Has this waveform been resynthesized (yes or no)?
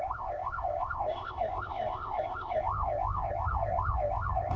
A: yes